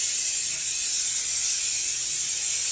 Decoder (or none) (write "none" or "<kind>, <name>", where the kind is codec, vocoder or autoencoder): none